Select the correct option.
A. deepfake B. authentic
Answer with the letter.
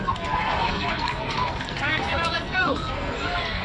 A